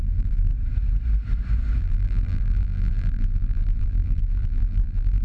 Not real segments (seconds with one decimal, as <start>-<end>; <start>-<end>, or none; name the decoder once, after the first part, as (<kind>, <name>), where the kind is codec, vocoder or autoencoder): 0.0-0.5 (vocoder, BigVGAN v2); 1.8-5.2